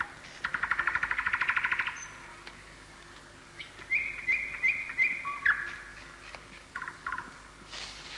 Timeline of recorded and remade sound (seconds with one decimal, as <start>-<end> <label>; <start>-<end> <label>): 0.0-0.5 recorded; 0.5-1.3 remade; 1.3-2.3 recorded; 2.3-3.7 remade; 3.7-5.9 recorded; 5.9-8.2 remade